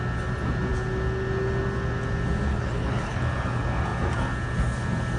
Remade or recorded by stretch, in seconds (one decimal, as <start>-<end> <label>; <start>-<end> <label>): 0.0-2.5 recorded; 2.5-3.2 remade; 3.2-5.2 recorded